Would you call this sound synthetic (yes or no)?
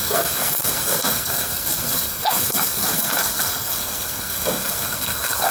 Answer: yes